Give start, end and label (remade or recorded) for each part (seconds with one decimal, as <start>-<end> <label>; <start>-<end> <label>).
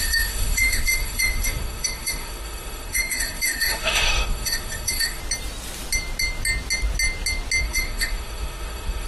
0.0-5.2 remade; 5.2-7.6 recorded; 7.6-9.1 remade